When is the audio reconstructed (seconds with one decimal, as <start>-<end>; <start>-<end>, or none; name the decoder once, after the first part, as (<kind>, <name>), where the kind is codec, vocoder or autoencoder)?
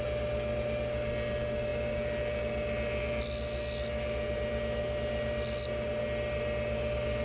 none